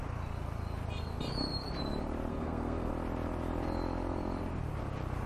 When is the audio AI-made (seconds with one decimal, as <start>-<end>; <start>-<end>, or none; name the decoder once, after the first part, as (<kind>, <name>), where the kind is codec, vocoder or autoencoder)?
2.3-2.9 (codec, SNAC)